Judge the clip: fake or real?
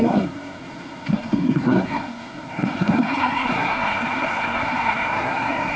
fake